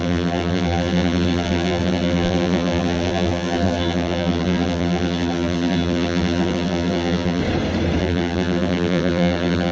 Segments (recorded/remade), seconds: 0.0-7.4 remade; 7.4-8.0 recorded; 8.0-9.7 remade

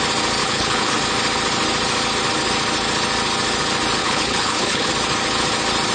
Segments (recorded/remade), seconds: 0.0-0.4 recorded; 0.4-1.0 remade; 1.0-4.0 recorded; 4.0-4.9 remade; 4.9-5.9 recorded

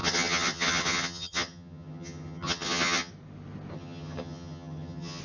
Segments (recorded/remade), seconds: 0.0-3.1 remade; 3.1-3.7 recorded; 3.7-5.2 remade

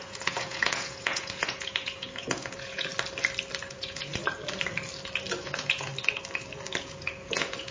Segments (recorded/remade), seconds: 0.0-2.9 remade; 2.9-3.6 recorded; 3.6-4.2 remade; 4.2-5.4 recorded; 5.4-5.9 remade; 5.9-6.8 recorded; 6.8-7.7 remade